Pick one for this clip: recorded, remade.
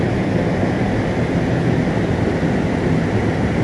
recorded